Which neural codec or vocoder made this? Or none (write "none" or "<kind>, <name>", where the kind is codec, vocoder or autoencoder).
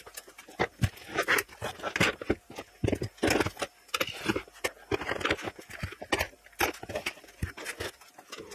none